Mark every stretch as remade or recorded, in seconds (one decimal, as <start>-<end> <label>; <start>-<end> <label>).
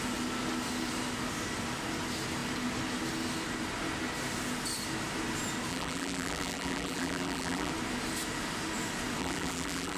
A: 0.0-5.7 recorded; 5.7-7.7 remade; 7.7-9.2 recorded; 9.2-10.0 remade